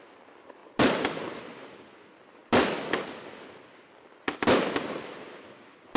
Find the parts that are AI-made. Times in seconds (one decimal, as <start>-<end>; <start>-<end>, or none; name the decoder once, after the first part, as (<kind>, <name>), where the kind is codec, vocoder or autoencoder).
none